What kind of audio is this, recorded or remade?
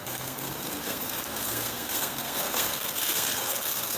remade